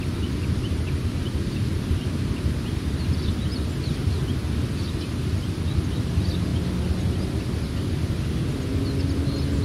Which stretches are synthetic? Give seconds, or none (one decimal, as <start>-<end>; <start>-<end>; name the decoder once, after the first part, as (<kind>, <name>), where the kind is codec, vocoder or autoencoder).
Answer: none